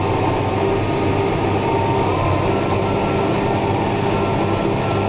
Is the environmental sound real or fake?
real